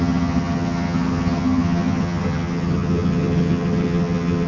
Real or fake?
fake